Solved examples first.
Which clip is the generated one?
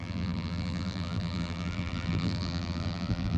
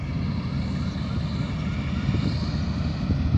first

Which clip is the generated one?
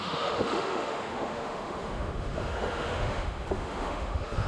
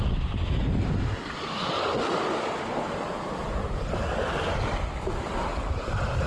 first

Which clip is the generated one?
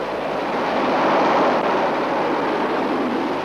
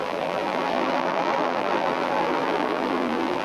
second